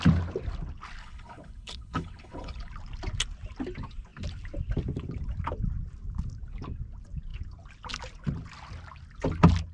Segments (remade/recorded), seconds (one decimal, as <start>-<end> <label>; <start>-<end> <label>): 0.0-1.0 recorded; 1.0-2.7 remade; 2.7-9.7 recorded